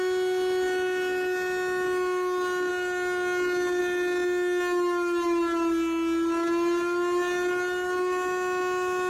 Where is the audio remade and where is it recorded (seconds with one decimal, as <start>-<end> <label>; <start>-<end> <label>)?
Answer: 0.0-9.1 recorded